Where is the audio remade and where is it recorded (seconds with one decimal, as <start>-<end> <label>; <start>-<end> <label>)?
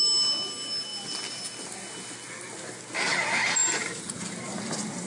0.0-5.1 recorded